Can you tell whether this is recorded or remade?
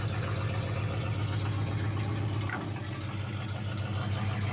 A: recorded